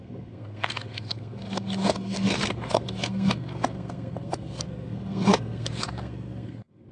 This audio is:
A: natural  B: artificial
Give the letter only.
B